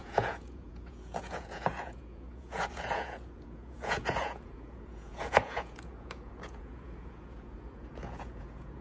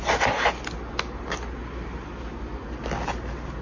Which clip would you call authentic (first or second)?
second